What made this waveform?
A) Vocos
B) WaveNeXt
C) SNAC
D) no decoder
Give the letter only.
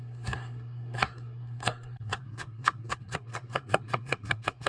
C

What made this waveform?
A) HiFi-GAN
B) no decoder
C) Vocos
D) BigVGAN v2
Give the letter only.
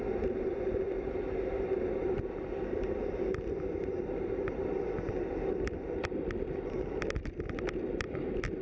B